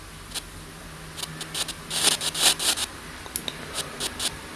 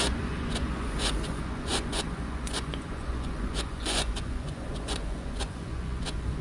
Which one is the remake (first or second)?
second